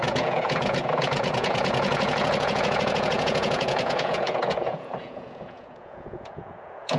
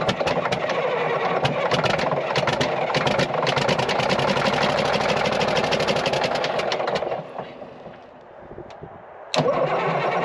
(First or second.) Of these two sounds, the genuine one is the second